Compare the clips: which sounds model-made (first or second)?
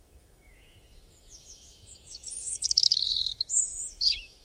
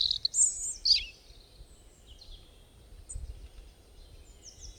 first